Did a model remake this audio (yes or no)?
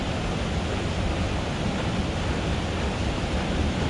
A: no